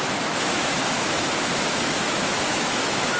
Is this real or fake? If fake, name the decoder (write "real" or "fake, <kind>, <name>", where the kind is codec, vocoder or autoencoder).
fake, autoencoder, DAC-VAE